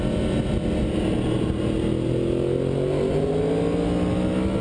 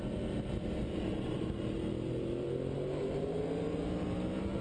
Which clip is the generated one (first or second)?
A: second